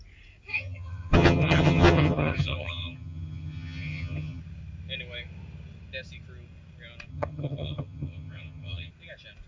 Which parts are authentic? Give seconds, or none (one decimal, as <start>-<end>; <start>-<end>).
0.0-0.5; 4.4-7.1; 8.9-9.5